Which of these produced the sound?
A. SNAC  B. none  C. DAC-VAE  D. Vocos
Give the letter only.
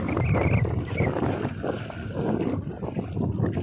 B